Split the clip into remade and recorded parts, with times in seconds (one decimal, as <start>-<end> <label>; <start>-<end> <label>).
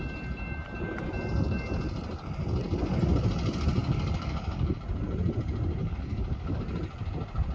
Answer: 0.0-3.8 recorded; 3.8-4.8 remade; 4.8-5.8 recorded; 5.8-6.6 remade; 6.6-7.5 recorded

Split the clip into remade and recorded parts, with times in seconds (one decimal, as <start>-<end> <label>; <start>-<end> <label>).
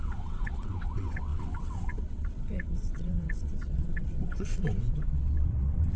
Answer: 0.0-6.0 remade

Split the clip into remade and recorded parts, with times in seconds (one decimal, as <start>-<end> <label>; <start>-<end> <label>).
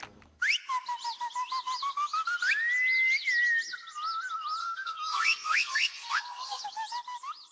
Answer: 0.0-4.6 recorded; 4.6-6.6 remade; 6.6-7.5 recorded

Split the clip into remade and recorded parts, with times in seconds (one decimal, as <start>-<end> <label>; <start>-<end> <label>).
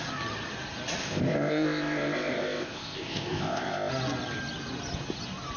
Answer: 0.0-1.0 recorded; 1.0-3.9 remade; 3.9-5.6 recorded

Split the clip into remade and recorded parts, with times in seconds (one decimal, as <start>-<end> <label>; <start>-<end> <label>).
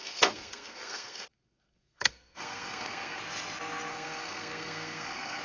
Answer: 0.0-3.2 remade; 3.2-3.9 recorded; 3.9-5.4 remade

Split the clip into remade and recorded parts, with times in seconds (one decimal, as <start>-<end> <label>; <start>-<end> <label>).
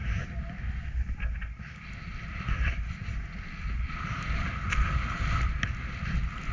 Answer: 0.0-6.5 recorded